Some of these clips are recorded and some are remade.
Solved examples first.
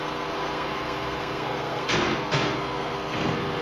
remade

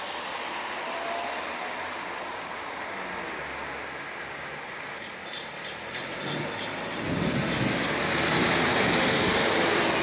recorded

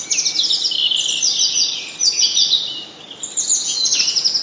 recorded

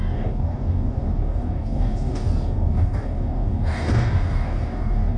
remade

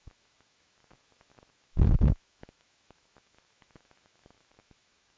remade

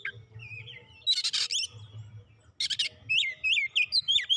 recorded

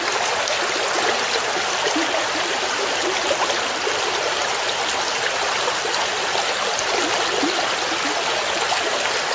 recorded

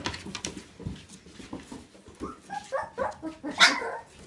recorded